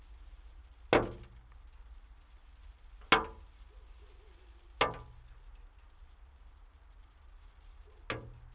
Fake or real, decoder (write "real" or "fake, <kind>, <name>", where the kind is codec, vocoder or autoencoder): real